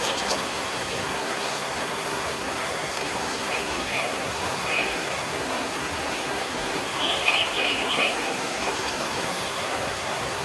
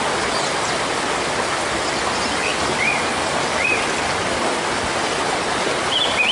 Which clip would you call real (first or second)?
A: second